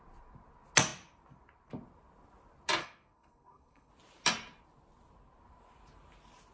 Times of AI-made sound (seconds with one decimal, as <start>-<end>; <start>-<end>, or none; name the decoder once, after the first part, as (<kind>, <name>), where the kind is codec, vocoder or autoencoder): 2.8-3.9 (codec, SNAC)